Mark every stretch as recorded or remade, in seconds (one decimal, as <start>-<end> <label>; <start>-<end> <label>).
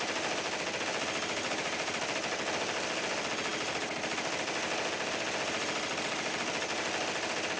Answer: 0.0-7.6 recorded